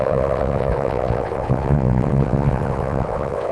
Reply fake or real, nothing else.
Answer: fake